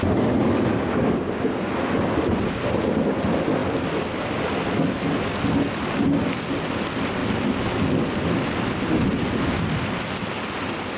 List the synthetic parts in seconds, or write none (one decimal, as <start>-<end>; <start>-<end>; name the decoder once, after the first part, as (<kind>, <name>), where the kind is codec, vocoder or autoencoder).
none